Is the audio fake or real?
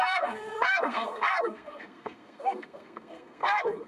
fake